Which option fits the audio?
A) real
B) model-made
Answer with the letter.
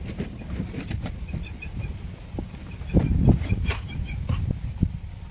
A